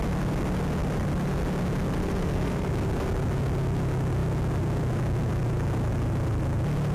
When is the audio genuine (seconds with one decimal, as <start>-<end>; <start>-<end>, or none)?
0.0-2.0; 2.7-6.9